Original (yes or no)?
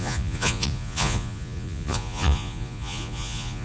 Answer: no